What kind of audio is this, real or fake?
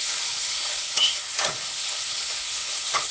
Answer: fake